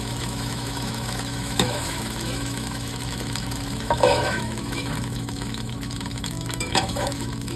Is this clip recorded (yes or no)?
no